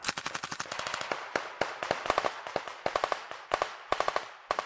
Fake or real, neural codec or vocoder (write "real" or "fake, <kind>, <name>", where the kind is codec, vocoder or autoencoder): real